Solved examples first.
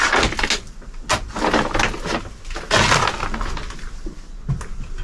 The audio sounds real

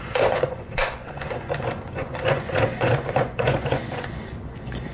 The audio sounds fake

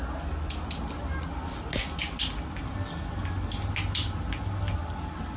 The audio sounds real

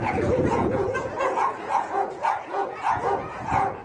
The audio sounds fake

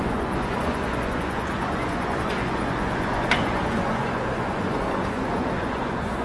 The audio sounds fake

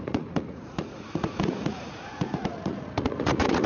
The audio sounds fake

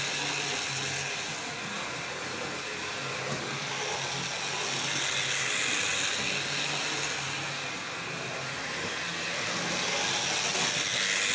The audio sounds real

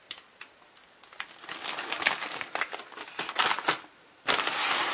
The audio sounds real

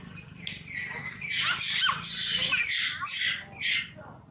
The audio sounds real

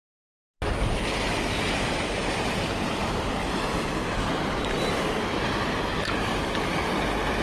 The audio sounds real